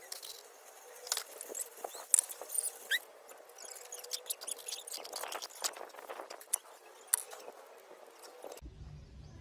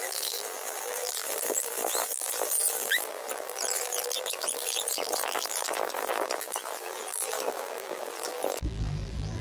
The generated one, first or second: second